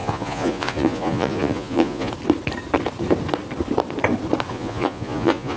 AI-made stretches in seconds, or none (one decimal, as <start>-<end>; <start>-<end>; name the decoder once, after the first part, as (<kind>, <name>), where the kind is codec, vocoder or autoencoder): 0.0-2.1 (vocoder, Vocos); 4.5-5.6